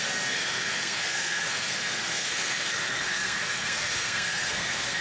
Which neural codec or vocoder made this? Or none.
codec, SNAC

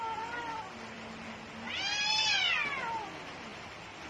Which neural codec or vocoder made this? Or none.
none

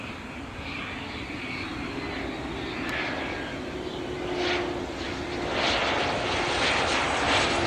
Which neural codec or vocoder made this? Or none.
none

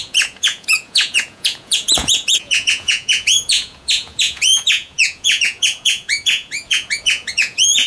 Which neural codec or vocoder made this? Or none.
vocoder, Vocos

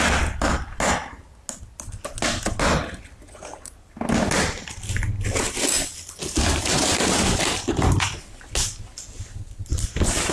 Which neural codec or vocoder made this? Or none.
none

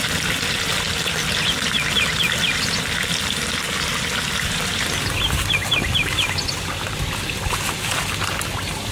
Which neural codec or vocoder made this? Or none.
none